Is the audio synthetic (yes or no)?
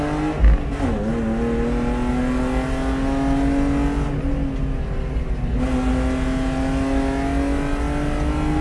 no